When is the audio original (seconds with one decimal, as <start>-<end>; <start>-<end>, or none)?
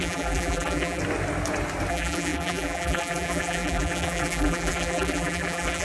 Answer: 1.0-1.9